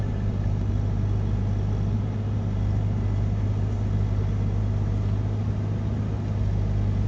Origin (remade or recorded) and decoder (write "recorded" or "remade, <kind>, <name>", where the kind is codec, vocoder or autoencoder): recorded